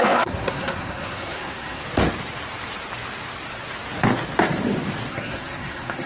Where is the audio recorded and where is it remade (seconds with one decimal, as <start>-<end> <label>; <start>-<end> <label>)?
0.0-1.8 remade; 1.8-5.1 recorded; 5.1-6.1 remade